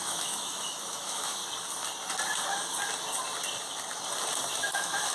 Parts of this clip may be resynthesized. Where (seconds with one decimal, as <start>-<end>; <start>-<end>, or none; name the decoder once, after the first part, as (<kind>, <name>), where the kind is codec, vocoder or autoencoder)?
0.0-1.4 (autoencoder, DAC-VAE); 4.5-5.1